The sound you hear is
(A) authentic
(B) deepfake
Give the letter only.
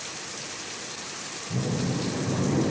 A